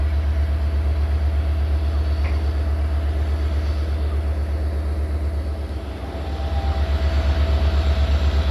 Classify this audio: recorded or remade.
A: recorded